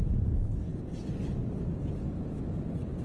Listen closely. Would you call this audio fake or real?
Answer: real